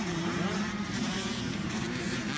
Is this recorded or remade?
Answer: remade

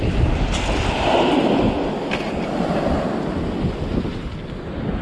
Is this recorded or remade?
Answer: recorded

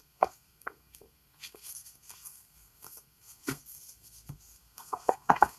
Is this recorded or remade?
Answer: remade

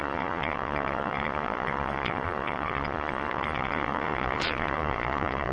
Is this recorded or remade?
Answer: remade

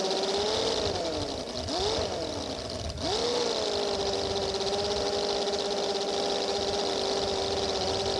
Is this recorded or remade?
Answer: recorded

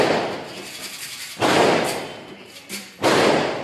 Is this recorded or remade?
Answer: remade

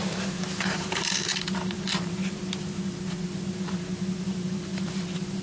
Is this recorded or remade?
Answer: remade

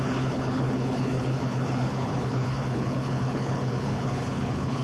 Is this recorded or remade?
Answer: remade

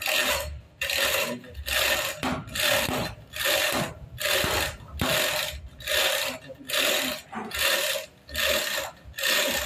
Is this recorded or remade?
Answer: recorded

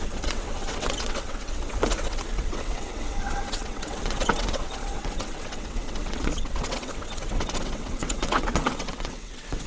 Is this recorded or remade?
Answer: remade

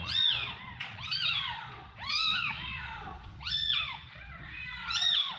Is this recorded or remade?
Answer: remade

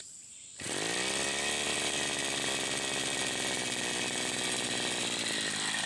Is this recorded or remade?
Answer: recorded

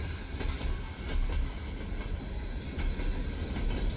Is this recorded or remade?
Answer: recorded